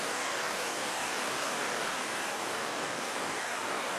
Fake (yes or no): yes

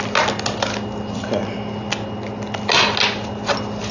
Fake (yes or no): no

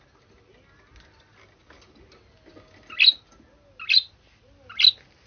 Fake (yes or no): no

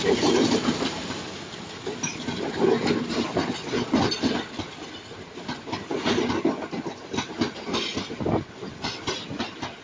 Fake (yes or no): no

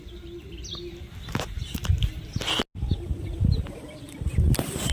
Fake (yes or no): no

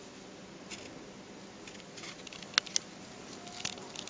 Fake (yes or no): no